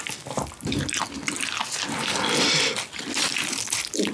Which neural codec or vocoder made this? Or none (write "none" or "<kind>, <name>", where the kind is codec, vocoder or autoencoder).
none